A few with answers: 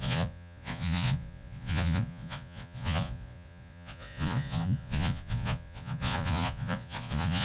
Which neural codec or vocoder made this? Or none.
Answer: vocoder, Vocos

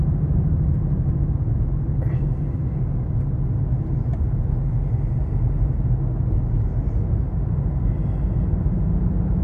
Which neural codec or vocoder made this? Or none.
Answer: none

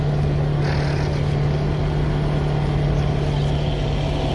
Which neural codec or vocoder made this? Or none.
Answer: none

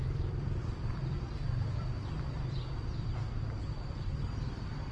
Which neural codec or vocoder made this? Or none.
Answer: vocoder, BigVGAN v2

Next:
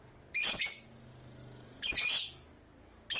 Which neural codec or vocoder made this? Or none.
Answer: none